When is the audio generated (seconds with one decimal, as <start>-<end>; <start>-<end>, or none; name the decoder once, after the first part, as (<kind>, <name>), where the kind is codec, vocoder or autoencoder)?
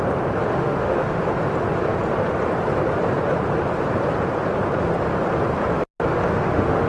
0.6-1.2 (autoencoder, DAC-VAE); 6.3-6.9